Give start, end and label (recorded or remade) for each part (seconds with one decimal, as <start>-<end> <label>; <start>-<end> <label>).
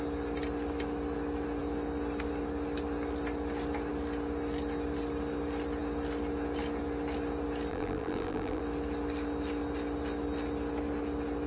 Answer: 0.0-7.7 recorded; 7.7-8.6 remade; 8.6-11.5 recorded